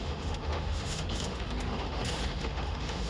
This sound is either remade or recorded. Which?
remade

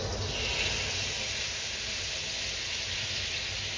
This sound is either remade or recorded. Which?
recorded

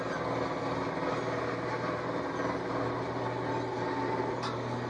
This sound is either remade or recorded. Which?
recorded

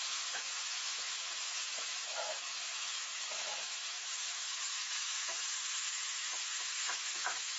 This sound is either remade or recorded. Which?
remade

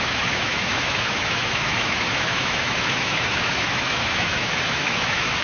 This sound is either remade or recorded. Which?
remade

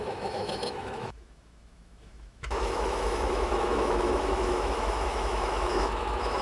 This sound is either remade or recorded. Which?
remade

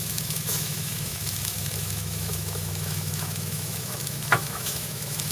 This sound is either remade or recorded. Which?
remade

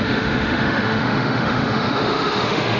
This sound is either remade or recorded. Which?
remade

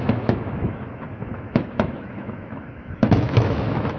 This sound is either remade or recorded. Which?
remade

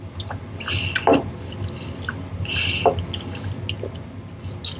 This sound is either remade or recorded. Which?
recorded